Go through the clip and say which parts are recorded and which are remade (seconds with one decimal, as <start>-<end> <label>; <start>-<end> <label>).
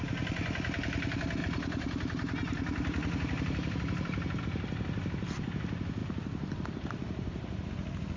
0.0-1.4 recorded; 1.4-4.4 remade; 4.4-6.0 recorded; 6.0-7.7 remade; 7.7-8.2 recorded